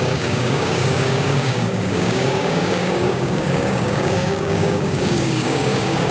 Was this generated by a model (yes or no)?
yes